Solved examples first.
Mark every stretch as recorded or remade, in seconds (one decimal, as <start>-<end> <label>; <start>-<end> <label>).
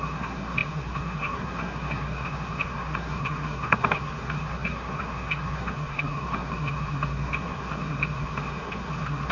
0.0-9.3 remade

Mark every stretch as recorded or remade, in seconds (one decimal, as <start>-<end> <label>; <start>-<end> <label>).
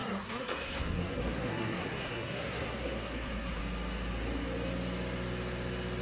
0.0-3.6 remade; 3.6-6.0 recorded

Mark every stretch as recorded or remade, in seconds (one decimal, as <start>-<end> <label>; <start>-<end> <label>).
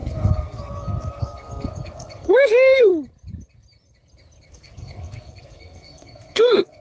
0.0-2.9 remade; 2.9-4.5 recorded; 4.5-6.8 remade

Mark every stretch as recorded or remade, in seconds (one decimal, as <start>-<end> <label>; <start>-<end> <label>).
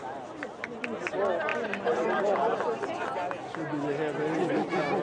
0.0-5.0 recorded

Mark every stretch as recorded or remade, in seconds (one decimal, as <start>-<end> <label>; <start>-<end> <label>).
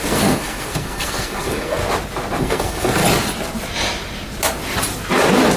0.0-1.8 remade; 1.8-2.4 recorded; 2.4-3.0 remade; 3.0-5.6 recorded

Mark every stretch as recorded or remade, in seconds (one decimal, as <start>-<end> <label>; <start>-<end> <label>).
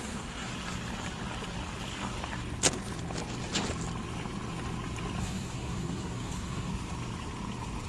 0.0-0.5 remade; 0.5-5.2 recorded; 5.2-6.7 remade; 6.7-7.9 recorded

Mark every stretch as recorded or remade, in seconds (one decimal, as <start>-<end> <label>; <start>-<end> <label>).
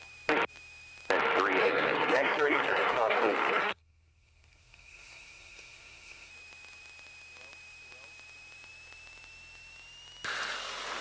0.0-1.6 recorded; 1.6-6.3 remade; 6.3-11.0 recorded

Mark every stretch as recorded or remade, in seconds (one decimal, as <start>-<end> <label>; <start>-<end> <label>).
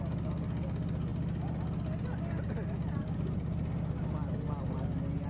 0.0-5.3 recorded